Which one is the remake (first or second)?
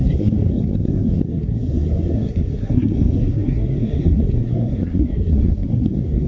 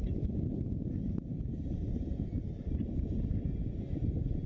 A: first